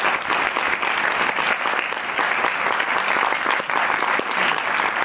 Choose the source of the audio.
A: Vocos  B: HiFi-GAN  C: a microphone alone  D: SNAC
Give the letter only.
C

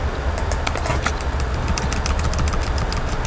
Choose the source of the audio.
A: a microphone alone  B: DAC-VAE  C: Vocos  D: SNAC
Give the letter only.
A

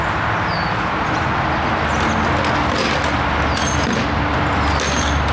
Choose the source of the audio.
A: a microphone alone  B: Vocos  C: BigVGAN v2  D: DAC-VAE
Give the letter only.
A